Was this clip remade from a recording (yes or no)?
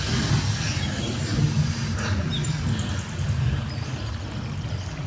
no